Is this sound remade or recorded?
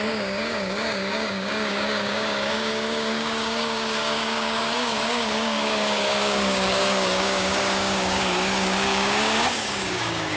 remade